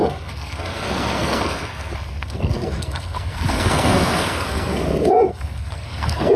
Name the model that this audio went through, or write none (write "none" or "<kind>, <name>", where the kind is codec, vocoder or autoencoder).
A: codec, SNAC